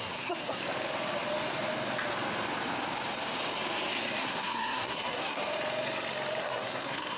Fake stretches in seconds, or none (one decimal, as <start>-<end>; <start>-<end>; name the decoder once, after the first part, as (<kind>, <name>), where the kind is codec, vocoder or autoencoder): 0.0-0.6 (codec, SNAC); 4.2-5.4; 6.4-7.2